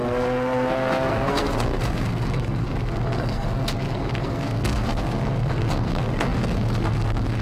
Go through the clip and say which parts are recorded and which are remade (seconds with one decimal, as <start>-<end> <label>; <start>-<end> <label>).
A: 0.0-7.4 remade